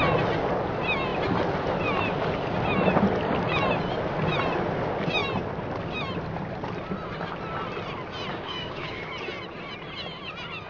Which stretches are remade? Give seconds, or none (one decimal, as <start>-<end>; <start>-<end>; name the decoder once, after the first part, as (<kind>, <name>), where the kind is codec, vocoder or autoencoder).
8.3-9.1 (codec, DAC)